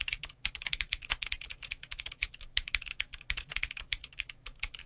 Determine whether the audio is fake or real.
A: fake